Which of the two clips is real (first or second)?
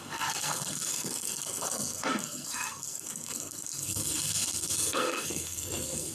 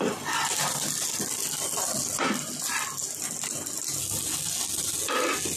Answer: second